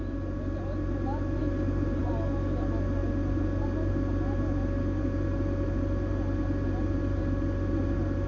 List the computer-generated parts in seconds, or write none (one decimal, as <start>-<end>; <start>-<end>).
none